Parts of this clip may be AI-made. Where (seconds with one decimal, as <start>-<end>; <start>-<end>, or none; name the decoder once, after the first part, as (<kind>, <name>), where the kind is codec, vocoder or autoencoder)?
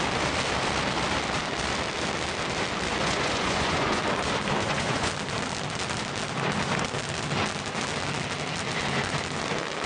3.0-4.0 (vocoder, Vocos); 4.6-5.1